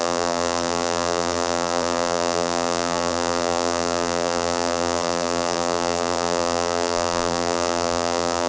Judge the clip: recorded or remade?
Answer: remade